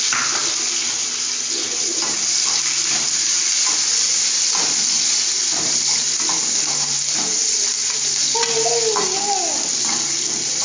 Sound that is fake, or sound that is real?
real